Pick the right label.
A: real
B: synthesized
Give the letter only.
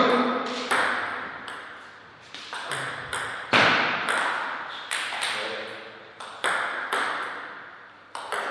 B